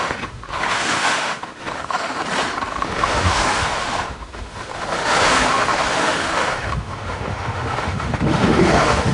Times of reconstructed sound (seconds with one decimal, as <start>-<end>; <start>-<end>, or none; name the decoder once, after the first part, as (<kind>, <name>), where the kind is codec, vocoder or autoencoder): 0.0-2.2 (autoencoder, DAC-VAE); 2.7-9.1